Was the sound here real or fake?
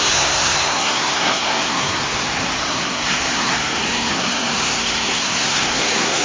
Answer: fake